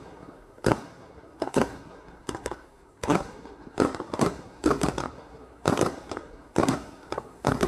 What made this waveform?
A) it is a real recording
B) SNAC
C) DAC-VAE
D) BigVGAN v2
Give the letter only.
B